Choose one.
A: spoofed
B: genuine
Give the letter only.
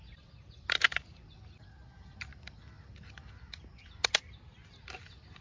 B